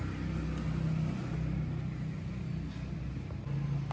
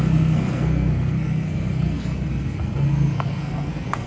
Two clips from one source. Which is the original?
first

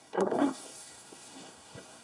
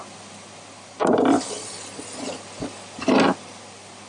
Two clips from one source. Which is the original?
second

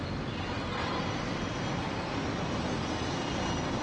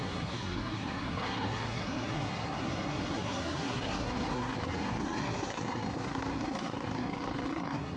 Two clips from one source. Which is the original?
first